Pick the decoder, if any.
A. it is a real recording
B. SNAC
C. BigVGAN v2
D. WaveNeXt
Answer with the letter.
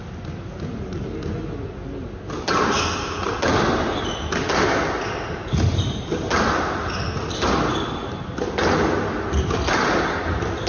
A